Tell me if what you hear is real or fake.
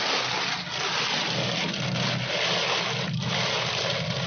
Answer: real